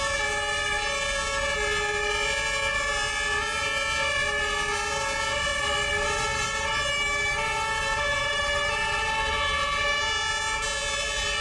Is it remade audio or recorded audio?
recorded